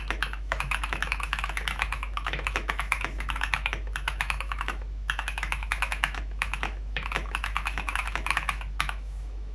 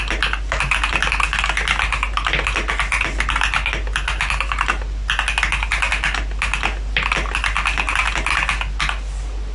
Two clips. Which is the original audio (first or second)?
second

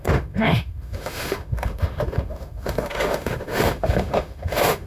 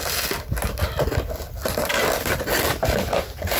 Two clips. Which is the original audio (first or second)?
second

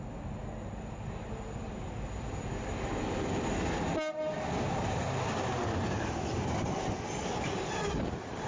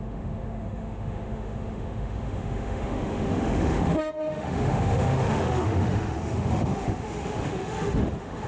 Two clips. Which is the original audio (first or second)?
first